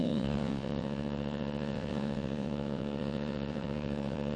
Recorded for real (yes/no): no